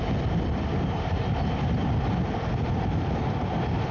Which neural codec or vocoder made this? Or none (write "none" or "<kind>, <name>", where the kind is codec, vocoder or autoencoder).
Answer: none